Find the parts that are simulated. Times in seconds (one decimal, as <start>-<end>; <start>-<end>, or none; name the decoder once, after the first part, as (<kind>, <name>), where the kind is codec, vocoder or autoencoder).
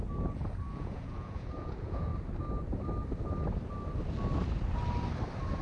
0.7-2.1 (vocoder, Vocos)